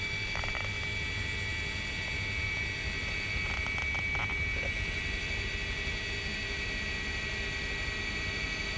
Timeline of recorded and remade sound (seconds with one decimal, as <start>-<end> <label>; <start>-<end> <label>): 0.0-8.8 recorded